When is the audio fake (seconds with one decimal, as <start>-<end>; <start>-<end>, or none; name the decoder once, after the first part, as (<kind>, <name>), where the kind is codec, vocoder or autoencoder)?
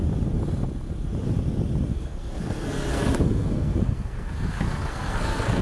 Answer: 1.9-5.6 (codec, SNAC)